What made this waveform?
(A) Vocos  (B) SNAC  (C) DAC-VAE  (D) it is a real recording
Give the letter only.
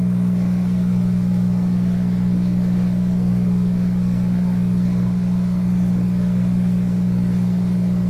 B